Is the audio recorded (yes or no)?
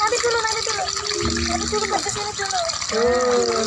yes